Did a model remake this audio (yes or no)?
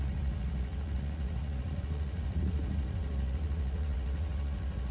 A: yes